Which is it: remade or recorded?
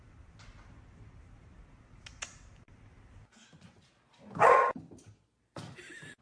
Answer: recorded